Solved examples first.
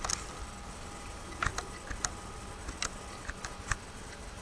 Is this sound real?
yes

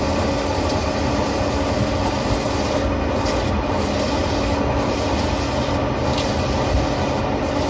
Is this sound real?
yes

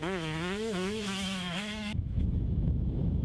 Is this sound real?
no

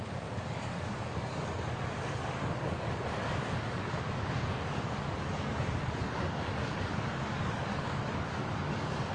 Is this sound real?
no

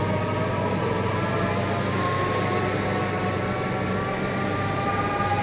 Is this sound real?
yes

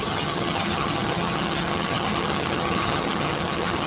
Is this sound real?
no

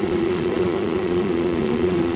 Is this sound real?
no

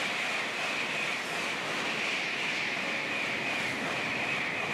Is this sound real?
yes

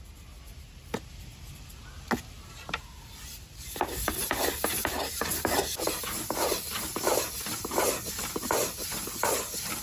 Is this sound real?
yes